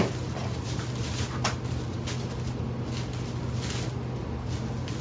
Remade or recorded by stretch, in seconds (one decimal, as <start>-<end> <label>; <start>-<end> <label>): 0.0-5.0 recorded